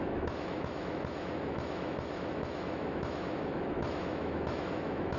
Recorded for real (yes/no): no